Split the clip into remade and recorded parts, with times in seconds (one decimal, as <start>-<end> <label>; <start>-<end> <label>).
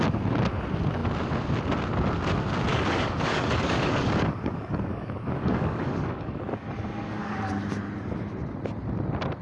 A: 0.0-2.7 recorded; 2.7-7.5 remade; 7.5-9.4 recorded